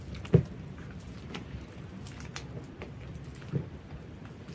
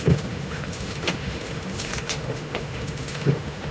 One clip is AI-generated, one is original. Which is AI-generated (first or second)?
second